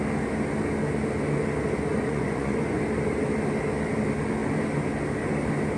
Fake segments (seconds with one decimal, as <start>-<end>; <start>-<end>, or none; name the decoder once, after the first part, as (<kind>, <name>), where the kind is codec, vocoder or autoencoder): 1.9-2.8 (vocoder, Vocos)